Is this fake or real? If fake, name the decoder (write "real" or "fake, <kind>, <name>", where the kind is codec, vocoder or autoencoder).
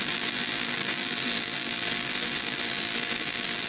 fake, vocoder, BigVGAN v2